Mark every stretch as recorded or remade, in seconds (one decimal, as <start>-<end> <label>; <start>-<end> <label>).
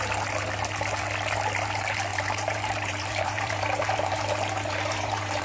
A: 0.0-2.1 recorded; 2.1-5.4 remade